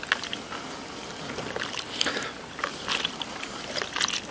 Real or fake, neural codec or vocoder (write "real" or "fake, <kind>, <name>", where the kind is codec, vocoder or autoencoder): real